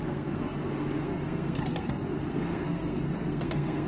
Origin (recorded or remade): remade